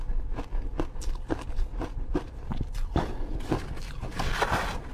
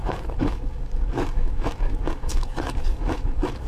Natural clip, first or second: first